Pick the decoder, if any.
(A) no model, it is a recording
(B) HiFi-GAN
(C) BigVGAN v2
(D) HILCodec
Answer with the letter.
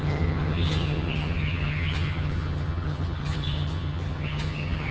B